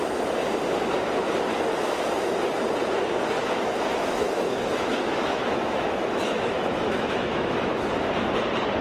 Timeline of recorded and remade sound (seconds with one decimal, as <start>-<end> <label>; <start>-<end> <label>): 0.0-3.4 recorded; 3.4-7.8 remade; 7.8-8.8 recorded